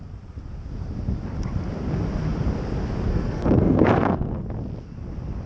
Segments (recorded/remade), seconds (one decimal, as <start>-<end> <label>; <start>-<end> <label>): 0.0-3.1 recorded; 3.1-4.3 remade; 4.3-5.5 recorded